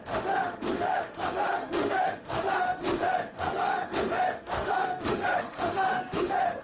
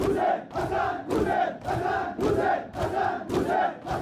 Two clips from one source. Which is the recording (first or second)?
second